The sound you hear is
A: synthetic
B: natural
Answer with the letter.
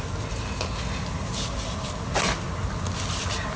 B